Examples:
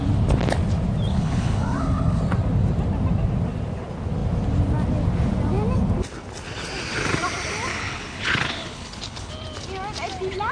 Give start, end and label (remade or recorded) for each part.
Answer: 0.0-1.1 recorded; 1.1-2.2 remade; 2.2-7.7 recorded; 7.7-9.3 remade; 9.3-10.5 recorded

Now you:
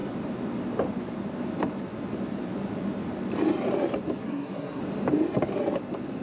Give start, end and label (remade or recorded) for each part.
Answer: 0.0-4.2 recorded; 4.2-4.8 remade; 4.8-6.2 recorded